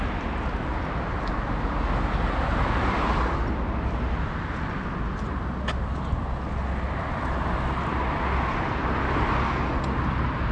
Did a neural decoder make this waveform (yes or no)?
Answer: no